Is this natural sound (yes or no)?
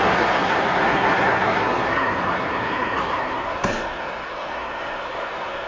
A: no